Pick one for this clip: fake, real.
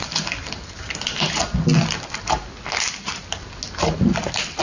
real